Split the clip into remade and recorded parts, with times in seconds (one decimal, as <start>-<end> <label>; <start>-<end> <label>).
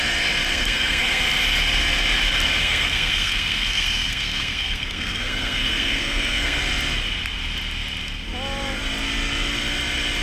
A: 0.0-0.5 recorded; 0.5-1.2 remade; 1.2-2.6 recorded; 2.6-6.6 remade; 6.6-10.2 recorded